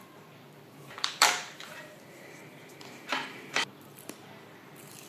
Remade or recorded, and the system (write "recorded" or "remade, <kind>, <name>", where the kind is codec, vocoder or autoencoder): remade, vocoder, BigVGAN v2